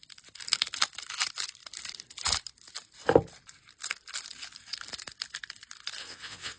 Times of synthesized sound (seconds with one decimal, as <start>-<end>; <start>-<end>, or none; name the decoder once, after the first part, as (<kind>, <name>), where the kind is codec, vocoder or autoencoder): 6.0-6.6 (vocoder, WaveNeXt)